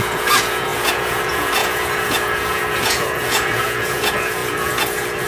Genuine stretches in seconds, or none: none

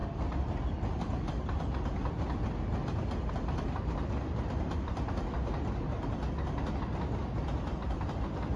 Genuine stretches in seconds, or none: 0.0-8.6

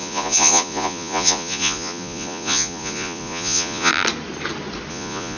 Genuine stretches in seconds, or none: 3.9-4.9

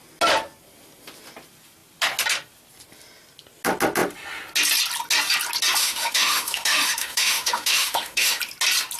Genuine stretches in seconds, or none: 0.0-5.8; 8.4-9.0